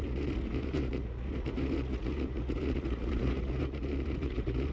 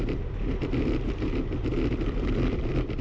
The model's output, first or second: first